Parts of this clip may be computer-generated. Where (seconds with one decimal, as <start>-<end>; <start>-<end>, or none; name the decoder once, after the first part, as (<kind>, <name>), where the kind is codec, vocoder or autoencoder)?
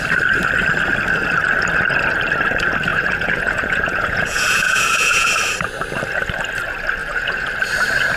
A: 2.9-5.3 (vocoder, Vocos); 7.0-7.5